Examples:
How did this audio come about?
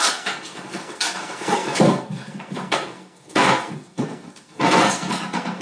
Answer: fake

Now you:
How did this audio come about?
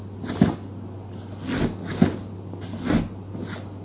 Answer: real